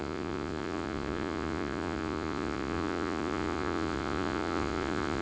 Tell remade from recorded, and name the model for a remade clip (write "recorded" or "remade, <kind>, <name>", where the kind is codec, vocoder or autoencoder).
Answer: remade, vocoder, Vocos